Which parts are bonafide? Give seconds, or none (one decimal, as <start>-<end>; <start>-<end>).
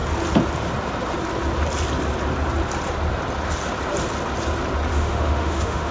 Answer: 0.0-4.9